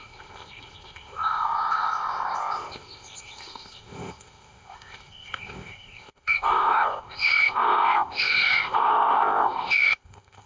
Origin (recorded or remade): remade